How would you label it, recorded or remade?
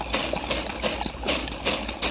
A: recorded